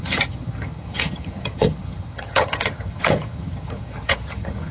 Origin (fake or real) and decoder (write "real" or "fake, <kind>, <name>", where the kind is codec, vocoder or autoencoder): fake, vocoder, HiFi-GAN